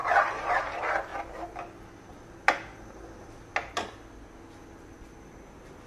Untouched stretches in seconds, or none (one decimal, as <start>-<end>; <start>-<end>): 0.0-5.9